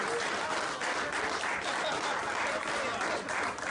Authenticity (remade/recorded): recorded